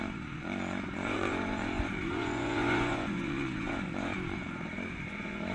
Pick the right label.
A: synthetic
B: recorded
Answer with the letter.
A